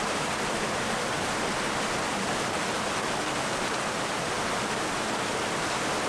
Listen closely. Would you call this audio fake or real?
real